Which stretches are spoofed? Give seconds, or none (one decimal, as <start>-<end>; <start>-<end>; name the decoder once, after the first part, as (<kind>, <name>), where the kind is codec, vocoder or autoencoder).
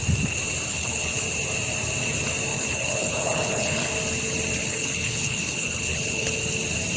0.7-1.2 (codec, HILCodec); 2.5-3.9; 4.6-6.4